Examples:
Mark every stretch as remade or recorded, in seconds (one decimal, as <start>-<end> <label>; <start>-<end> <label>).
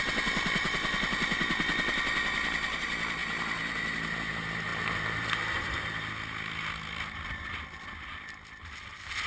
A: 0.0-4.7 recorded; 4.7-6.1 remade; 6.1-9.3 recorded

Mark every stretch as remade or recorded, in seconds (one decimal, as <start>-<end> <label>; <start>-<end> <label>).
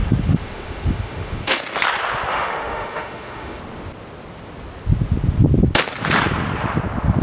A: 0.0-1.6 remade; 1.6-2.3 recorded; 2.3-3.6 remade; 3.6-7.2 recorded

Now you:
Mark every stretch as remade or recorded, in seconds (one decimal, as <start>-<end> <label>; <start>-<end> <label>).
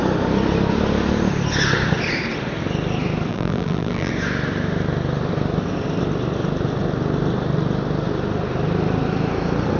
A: 0.0-3.3 recorded; 3.3-4.1 remade; 4.1-9.8 recorded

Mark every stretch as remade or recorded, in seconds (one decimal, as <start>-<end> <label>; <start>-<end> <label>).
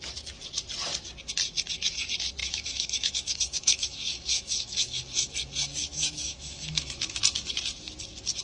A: 0.0-2.4 recorded; 2.4-5.0 remade; 5.0-5.8 recorded; 5.8-7.2 remade; 7.2-8.4 recorded